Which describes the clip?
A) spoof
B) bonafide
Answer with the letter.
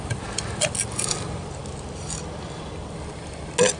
B